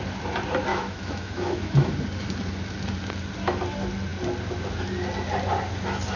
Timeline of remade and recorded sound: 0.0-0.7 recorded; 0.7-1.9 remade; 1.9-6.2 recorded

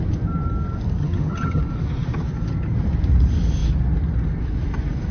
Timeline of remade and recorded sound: 0.0-1.0 recorded; 1.0-1.6 remade; 1.6-5.1 recorded

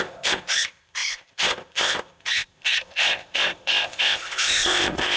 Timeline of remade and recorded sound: 0.0-5.2 remade

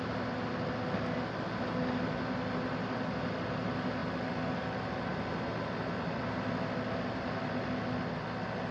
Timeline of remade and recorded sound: 0.0-8.7 recorded

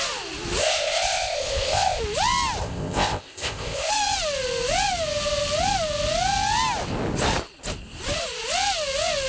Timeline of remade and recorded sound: 0.0-0.6 recorded; 0.6-2.0 remade; 2.0-2.6 recorded; 2.6-3.9 remade; 3.9-9.3 recorded

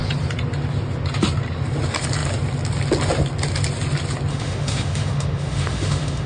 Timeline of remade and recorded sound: 0.0-4.3 recorded; 4.3-6.3 remade